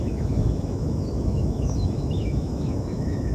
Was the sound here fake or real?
fake